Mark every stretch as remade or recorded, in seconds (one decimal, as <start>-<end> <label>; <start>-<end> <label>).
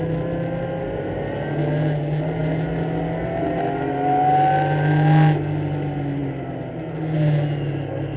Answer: 0.0-8.2 recorded